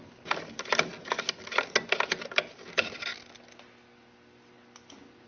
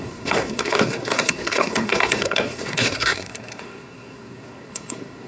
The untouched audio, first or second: first